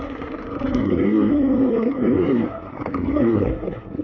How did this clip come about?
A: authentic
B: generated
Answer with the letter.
B